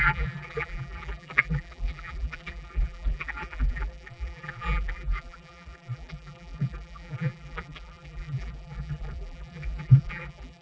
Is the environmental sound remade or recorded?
remade